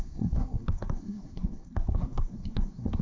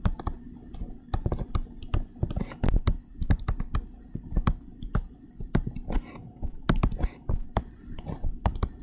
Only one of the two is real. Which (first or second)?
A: second